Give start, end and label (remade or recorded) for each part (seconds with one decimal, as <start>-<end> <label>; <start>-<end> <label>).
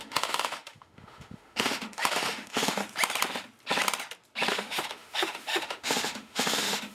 0.0-2.8 remade; 2.8-4.5 recorded; 4.5-6.9 remade